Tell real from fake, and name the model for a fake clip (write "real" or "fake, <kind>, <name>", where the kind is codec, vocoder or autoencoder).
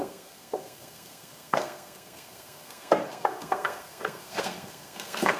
fake, codec, SNAC